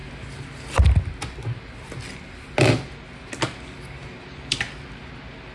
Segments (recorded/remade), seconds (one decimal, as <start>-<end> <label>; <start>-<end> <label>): 0.0-5.5 recorded